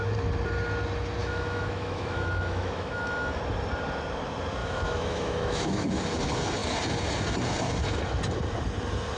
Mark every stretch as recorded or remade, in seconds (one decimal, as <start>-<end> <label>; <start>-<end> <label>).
0.0-1.2 recorded; 1.2-3.4 remade; 3.4-4.6 recorded; 4.6-6.0 remade; 6.0-9.2 recorded